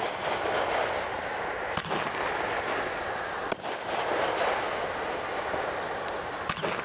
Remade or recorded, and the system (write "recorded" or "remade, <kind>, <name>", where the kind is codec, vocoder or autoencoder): recorded